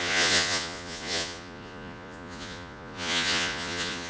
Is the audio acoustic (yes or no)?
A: no